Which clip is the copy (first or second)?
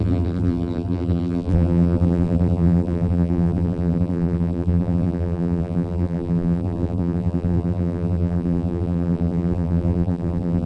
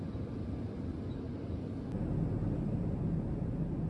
first